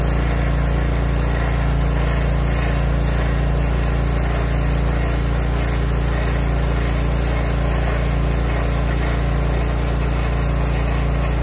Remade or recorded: recorded